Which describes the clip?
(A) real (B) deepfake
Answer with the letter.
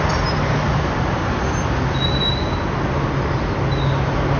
A